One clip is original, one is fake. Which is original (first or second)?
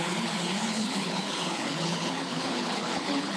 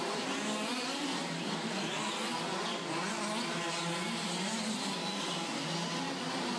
second